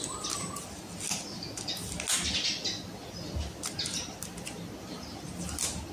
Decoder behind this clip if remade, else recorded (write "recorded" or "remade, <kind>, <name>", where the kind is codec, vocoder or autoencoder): recorded